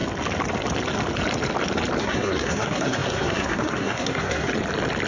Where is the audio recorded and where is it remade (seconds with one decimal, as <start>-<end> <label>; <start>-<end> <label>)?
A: 0.0-2.0 recorded; 2.0-4.5 remade; 4.5-5.1 recorded